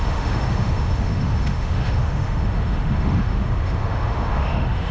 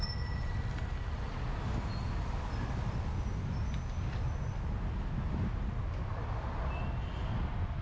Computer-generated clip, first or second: first